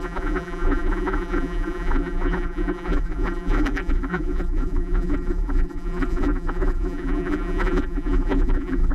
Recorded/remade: remade